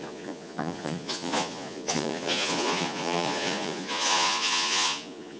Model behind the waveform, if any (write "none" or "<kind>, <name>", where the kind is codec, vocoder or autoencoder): vocoder, Vocos